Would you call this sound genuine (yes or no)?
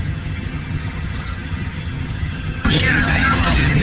no